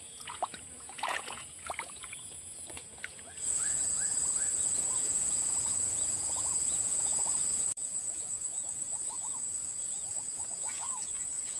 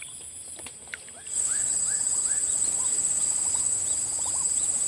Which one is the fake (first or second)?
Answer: first